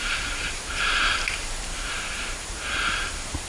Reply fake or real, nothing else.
fake